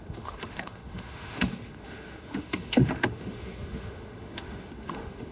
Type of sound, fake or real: fake